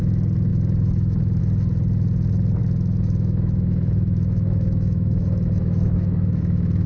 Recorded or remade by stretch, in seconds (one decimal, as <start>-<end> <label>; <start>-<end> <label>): 0.0-0.5 recorded; 0.5-1.4 remade; 1.4-2.6 recorded; 2.6-6.9 remade